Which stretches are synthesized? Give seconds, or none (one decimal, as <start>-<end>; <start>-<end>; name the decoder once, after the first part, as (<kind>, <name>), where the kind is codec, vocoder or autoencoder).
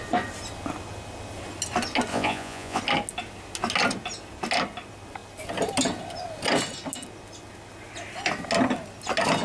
2.1-2.8 (vocoder, Vocos)